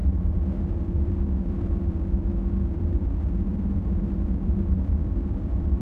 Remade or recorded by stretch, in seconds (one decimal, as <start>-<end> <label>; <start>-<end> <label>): 0.0-3.1 remade; 3.1-3.5 recorded; 3.5-5.8 remade